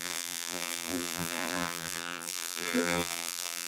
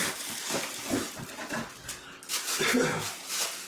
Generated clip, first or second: first